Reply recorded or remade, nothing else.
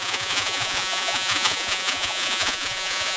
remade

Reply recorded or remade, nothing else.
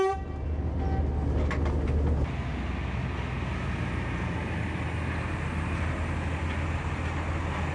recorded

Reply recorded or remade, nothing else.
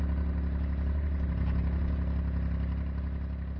recorded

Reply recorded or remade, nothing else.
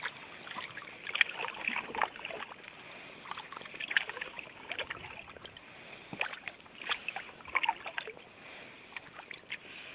recorded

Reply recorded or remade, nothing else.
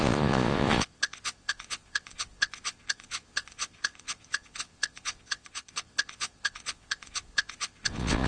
remade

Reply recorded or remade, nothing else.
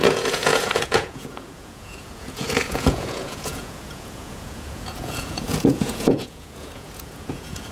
remade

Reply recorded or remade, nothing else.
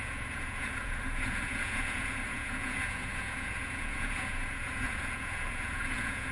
remade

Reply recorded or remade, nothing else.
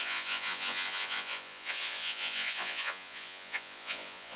remade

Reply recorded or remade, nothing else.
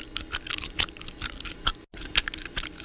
recorded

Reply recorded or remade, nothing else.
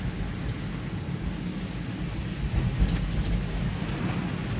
recorded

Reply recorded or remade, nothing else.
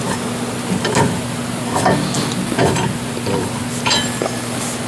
recorded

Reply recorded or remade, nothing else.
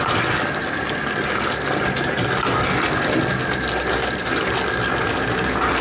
recorded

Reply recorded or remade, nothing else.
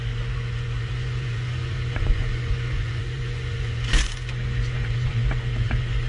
remade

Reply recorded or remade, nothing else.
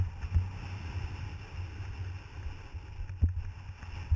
recorded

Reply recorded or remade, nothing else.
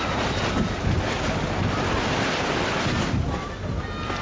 recorded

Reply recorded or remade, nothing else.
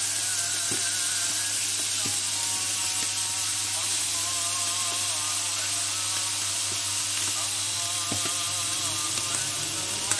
recorded